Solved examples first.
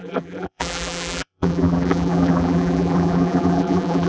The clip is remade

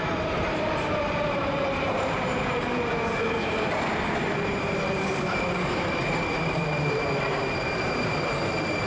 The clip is remade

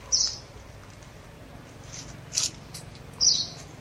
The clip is recorded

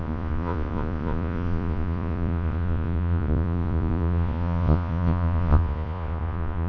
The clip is remade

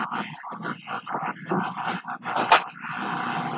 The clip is recorded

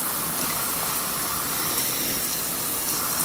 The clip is recorded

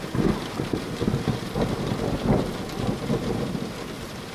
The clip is remade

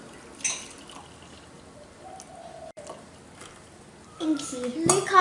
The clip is recorded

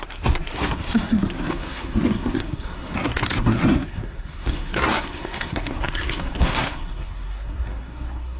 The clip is remade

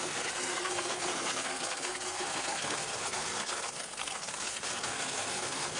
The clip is remade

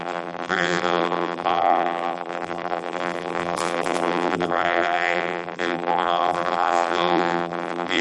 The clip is remade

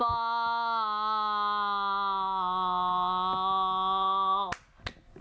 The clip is recorded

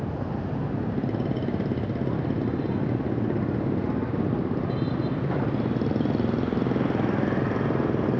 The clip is recorded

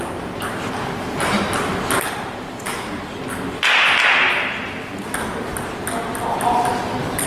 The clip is recorded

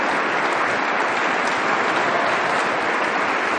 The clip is recorded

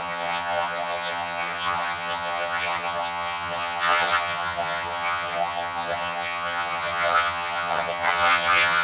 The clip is remade